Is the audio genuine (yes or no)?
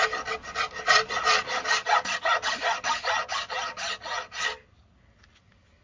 yes